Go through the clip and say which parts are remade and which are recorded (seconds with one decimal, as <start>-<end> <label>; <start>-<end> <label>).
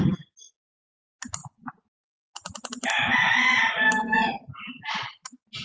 0.0-5.6 recorded